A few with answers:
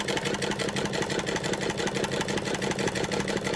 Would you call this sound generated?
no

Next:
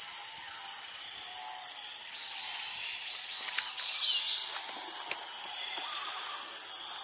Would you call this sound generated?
no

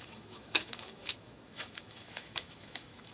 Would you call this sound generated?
yes